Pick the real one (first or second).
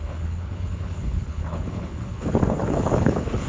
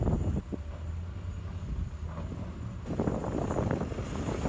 second